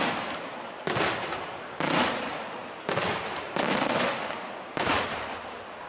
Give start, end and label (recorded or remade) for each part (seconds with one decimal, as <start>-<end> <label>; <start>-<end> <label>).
0.0-5.9 recorded